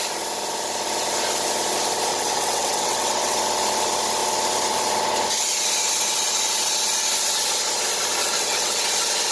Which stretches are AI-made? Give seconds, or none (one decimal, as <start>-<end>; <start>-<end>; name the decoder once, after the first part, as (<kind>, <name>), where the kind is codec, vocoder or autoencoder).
2.1-3.4 (vocoder, WaveNeXt); 8.2-8.8